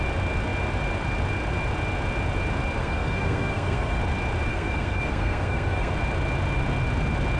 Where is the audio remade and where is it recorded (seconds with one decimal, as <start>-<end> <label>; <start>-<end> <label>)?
0.0-2.8 recorded; 2.8-4.0 remade; 4.0-4.5 recorded; 4.5-5.9 remade; 5.9-7.4 recorded